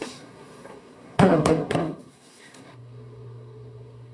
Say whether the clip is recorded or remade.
remade